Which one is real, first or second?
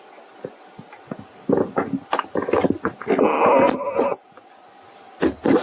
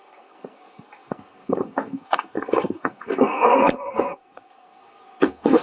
first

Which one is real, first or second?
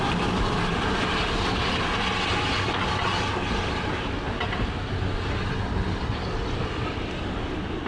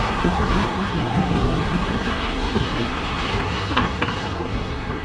first